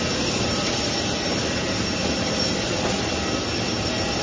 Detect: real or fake real